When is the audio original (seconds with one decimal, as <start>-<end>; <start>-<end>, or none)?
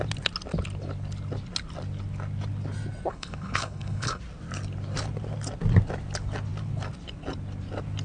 0.0-3.1; 4.2-8.0